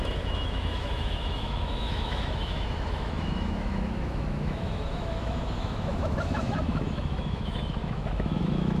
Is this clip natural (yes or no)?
no